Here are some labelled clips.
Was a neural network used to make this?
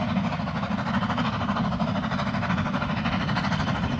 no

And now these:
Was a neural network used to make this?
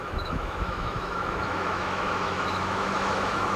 yes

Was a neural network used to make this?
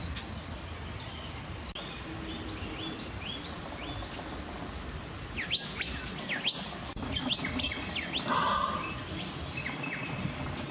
no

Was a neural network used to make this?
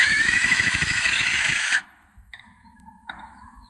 yes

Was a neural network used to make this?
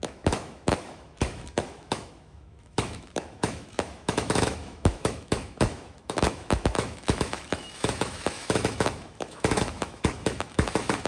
yes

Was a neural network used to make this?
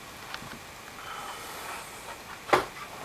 no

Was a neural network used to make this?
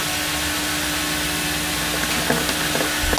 no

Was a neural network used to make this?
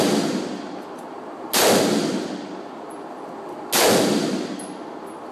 no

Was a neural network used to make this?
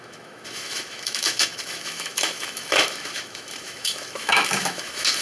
yes